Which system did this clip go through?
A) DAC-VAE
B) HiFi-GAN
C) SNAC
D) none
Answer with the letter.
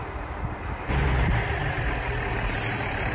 D